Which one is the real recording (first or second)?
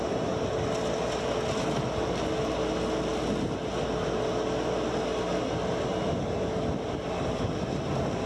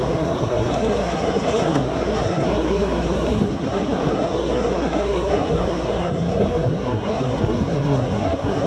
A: first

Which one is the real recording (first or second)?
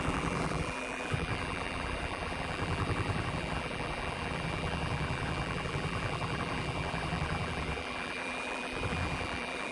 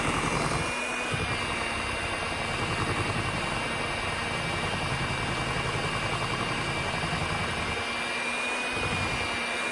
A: second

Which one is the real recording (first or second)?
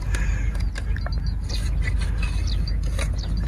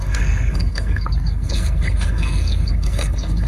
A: first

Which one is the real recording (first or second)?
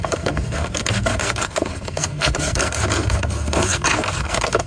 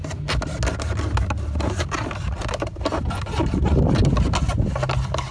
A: second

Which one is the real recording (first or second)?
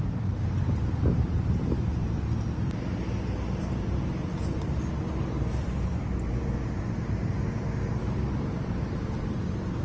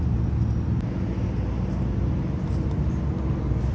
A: second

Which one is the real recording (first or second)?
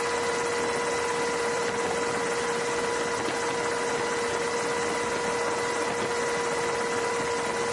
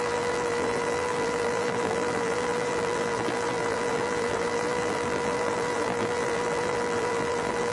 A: first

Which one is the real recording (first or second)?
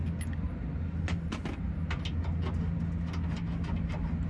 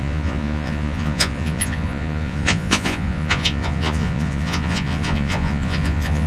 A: first